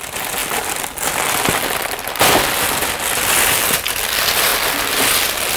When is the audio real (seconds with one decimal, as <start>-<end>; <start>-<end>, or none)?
0.0-5.6